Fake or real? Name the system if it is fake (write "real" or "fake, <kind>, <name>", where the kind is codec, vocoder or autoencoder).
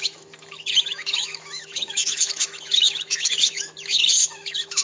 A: fake, autoencoder, DAC-VAE